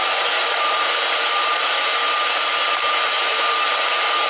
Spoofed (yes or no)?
yes